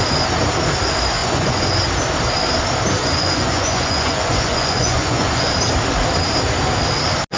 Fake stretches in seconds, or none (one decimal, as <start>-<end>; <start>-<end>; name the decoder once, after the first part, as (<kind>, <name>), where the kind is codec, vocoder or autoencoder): 1.2-1.7 (vocoder, Vocos); 3.0-5.5

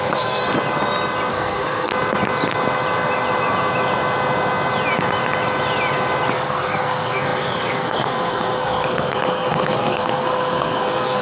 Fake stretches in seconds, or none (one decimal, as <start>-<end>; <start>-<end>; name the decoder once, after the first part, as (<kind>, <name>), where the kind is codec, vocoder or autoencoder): 0.0-0.4 (codec, SNAC); 1.3-1.9; 6.3-11.2

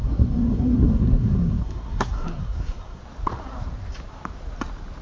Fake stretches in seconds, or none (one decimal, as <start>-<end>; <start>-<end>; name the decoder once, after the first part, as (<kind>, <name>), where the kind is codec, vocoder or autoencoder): 0.0-3.0 (codec, SNAC)

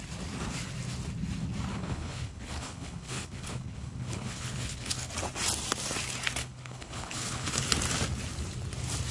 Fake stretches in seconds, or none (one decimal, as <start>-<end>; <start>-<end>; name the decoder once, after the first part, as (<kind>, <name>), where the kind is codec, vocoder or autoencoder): 1.7-5.1 (codec, HILCodec); 6.4-7.6